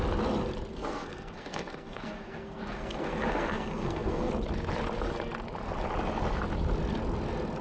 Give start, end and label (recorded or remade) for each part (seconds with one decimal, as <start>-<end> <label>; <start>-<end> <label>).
0.0-0.7 recorded; 0.7-4.3 remade; 4.3-7.6 recorded